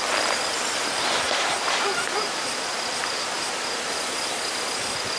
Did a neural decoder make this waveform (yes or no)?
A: no